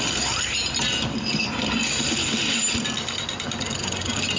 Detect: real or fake real